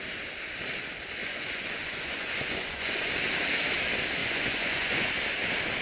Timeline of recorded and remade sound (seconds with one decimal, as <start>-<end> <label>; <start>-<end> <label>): 0.0-1.2 recorded; 1.2-3.1 remade; 3.1-4.2 recorded; 4.2-5.1 remade; 5.1-5.8 recorded